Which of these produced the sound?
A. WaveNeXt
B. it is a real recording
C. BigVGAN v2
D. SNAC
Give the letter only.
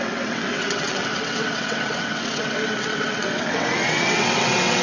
A